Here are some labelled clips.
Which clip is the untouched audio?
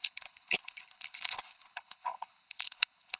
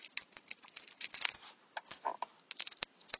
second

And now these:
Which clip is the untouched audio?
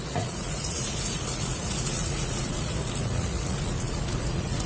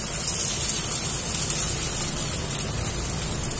second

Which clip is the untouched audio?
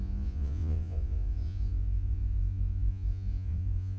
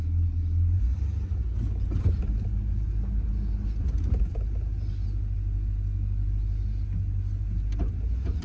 second